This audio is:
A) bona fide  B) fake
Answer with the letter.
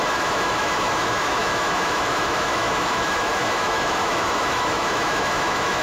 B